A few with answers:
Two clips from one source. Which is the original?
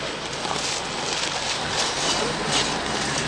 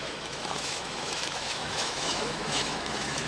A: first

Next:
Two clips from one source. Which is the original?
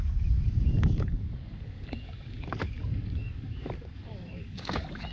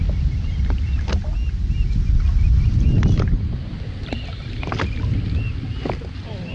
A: second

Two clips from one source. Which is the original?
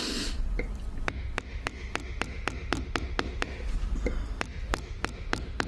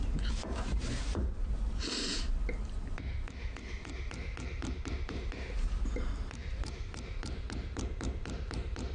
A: first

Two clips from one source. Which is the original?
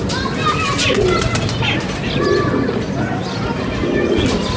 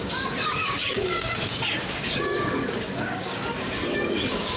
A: first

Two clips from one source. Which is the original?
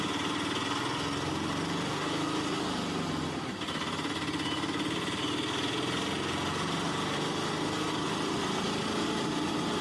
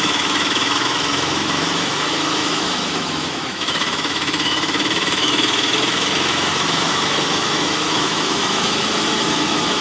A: first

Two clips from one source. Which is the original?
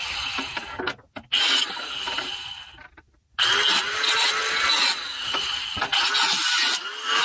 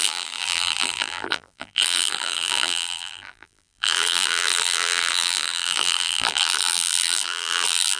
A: first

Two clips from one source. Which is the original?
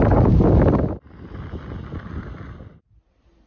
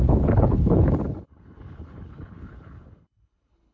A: first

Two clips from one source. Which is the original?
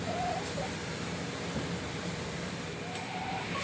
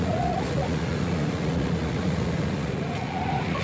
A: first